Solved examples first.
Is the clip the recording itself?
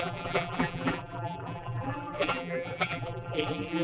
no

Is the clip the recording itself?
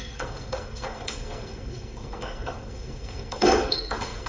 no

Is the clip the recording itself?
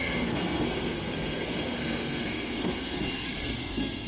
no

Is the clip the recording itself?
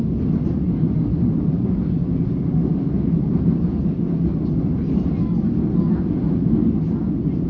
yes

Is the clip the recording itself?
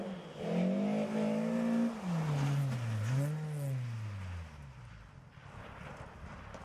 yes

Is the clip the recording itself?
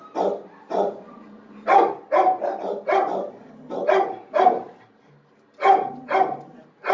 yes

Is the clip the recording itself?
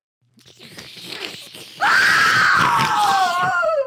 no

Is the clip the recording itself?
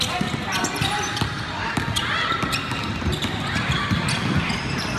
yes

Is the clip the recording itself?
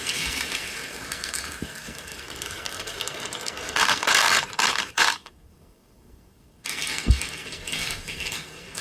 no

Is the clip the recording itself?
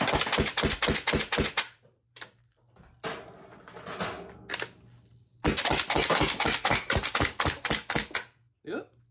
yes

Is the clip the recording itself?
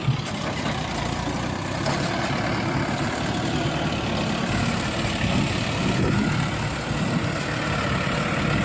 yes